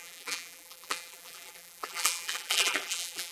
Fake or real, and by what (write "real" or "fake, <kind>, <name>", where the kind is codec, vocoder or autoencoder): fake, vocoder, BigVGAN v2